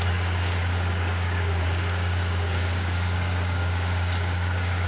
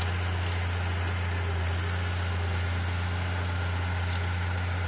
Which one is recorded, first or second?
second